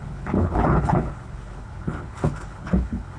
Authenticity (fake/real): fake